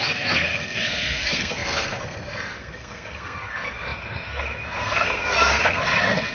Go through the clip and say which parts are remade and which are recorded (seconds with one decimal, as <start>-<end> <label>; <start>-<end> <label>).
0.0-6.3 remade

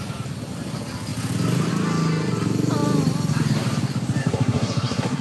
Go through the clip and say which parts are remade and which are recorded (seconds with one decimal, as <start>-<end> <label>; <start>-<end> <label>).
0.0-4.2 recorded; 4.2-5.2 remade

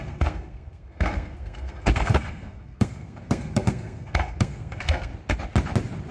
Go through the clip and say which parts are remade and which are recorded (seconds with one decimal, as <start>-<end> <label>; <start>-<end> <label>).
0.0-5.1 remade; 5.1-6.1 recorded

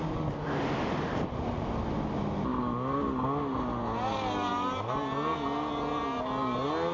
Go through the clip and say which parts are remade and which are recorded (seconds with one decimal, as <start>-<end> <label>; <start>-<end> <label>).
0.0-6.9 recorded

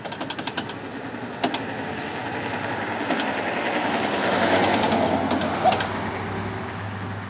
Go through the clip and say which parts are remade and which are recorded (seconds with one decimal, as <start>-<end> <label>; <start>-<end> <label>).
0.0-7.3 recorded

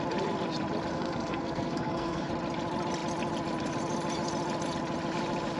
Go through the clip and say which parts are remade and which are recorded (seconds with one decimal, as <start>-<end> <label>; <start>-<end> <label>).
0.0-0.9 recorded; 0.9-2.3 remade; 2.3-5.6 recorded